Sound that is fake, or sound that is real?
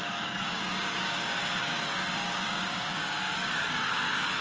fake